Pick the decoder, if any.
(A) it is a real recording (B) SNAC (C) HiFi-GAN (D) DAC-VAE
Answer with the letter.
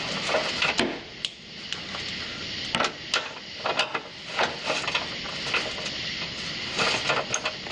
A